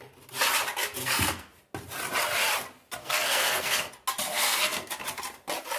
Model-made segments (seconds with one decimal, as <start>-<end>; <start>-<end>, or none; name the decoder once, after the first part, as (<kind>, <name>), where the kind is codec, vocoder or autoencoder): 1.0-1.6 (codec, SNAC); 3.0-3.9; 4.3-4.9